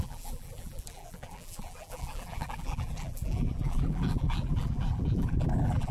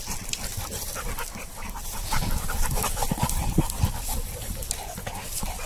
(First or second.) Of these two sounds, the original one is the second